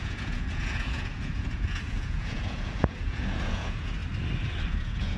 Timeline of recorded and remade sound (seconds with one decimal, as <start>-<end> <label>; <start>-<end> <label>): 0.0-4.0 remade; 4.0-4.7 recorded; 4.7-5.2 remade